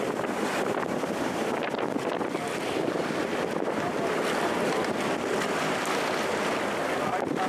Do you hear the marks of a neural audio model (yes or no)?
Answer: no